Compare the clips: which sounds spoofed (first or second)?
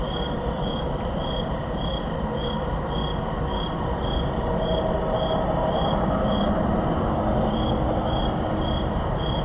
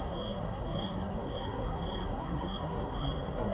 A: second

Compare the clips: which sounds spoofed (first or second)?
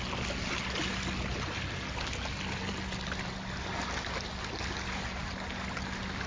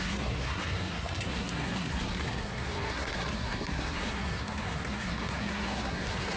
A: second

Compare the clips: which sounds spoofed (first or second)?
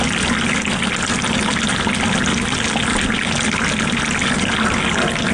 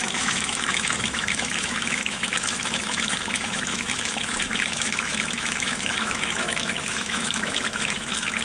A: second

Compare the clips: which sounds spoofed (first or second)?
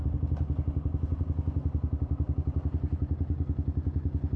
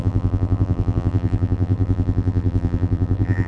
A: second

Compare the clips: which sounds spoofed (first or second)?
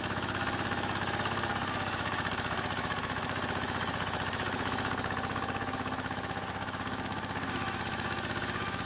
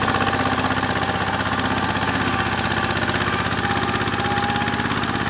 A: first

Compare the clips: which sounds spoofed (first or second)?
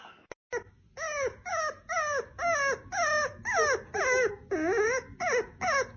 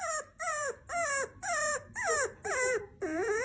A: second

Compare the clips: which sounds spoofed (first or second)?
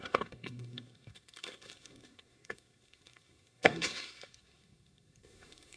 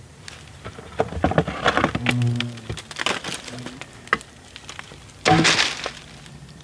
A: first